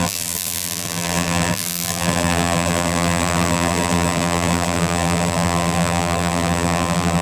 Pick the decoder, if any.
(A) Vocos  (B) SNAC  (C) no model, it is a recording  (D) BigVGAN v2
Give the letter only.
D